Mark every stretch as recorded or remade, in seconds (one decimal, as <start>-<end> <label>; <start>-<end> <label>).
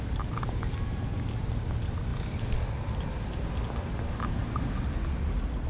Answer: 0.0-5.7 recorded